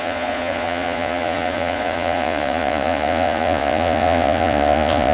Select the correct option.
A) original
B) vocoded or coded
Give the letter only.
B